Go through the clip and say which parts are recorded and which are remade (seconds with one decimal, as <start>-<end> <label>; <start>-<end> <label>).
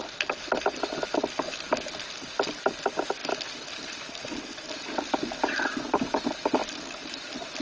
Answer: 0.0-7.6 recorded